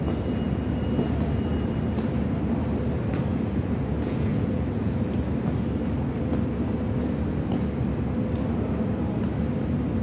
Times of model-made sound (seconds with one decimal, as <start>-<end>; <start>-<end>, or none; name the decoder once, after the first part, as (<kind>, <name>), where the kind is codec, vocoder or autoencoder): 3.3-5.1 (vocoder, Vocos)